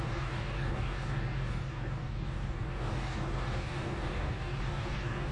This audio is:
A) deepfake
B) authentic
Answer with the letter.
A